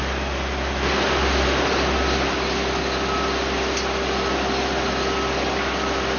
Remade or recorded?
recorded